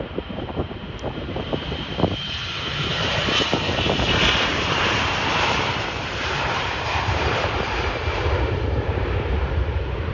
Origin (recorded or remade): remade